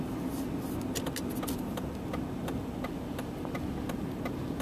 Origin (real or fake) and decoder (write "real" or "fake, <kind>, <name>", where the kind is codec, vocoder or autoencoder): real